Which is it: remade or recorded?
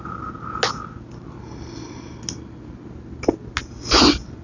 recorded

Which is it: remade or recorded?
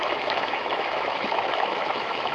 remade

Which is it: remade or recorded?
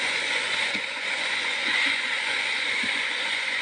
remade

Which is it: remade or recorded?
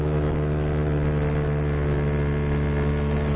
recorded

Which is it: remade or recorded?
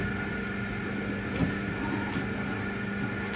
recorded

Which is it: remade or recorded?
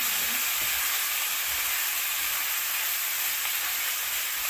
recorded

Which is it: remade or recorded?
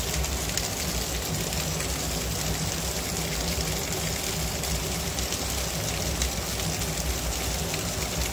recorded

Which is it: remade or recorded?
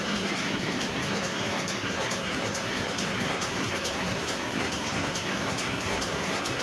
remade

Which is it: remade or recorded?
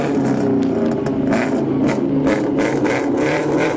recorded